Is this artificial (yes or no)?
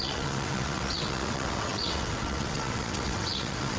yes